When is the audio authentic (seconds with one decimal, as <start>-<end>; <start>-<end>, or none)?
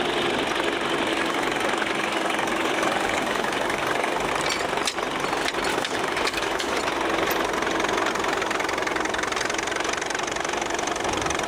0.0-1.1; 4.3-5.7; 6.8-11.5